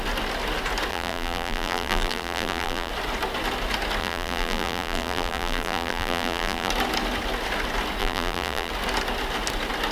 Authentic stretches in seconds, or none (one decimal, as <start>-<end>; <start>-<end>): 0.0-0.9; 2.9-4.0; 6.7-8.0; 8.7-9.9